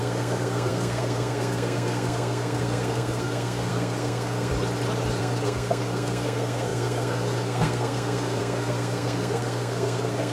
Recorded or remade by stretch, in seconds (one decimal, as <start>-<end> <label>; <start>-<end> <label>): 0.0-4.5 remade; 4.5-5.2 recorded; 5.2-10.3 remade